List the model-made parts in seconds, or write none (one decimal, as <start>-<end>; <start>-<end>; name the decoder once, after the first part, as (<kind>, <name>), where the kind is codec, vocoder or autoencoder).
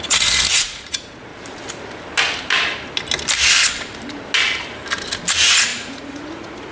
0.0-1.3 (vocoder, Vocos); 5.3-6.7